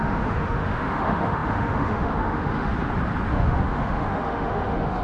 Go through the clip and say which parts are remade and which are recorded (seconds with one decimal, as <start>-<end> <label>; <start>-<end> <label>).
0.0-2.7 remade; 2.7-3.3 recorded; 3.3-5.0 remade